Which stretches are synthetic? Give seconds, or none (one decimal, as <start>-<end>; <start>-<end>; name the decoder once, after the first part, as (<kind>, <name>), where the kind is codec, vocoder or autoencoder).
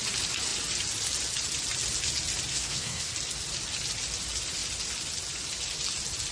2.5-3.1 (codec, SNAC)